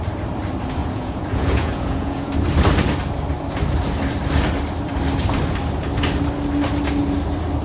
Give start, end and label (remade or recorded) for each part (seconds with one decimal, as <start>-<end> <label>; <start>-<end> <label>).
0.0-0.8 recorded; 0.8-2.3 remade; 2.3-7.6 recorded

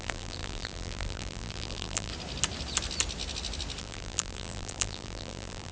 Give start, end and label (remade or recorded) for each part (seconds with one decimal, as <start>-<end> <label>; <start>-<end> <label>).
0.0-2.1 remade; 2.1-3.8 recorded; 3.8-5.7 remade

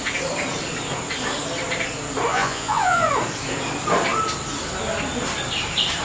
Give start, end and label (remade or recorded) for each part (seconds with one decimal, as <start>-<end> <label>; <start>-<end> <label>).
0.0-2.3 recorded; 2.3-3.1 remade; 3.1-6.0 recorded

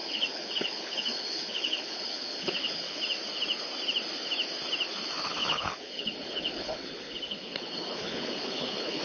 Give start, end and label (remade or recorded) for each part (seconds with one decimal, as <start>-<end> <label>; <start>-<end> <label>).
0.0-3.0 remade; 3.0-5.4 recorded; 5.4-9.0 remade